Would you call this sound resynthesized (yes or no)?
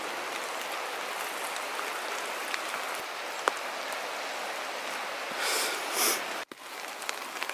no